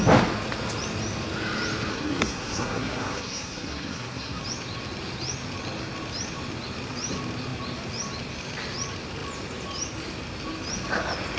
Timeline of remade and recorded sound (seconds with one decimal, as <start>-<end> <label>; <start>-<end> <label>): 0.0-1.9 recorded; 1.9-4.4 remade; 4.4-11.4 recorded